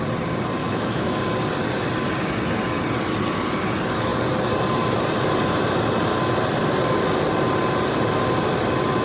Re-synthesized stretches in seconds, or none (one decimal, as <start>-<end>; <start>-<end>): 0.6-1.2